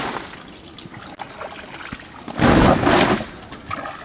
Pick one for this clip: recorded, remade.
recorded